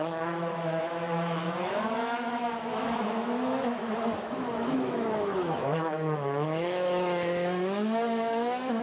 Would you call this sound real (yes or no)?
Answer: no